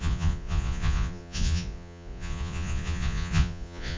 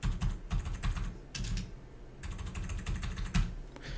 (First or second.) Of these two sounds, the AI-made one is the first